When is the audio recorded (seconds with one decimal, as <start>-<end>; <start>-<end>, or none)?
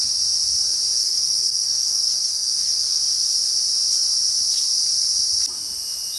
0.0-1.0; 3.0-6.2